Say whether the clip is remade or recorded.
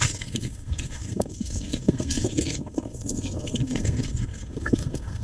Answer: remade